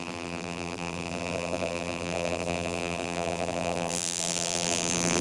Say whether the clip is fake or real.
fake